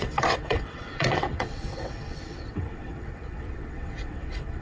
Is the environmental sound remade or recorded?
remade